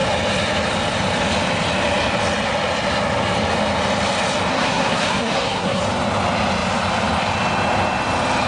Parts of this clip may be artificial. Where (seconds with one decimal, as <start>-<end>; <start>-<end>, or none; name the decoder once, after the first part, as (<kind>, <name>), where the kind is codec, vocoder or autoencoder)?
4.5-5.8 (codec, SNAC)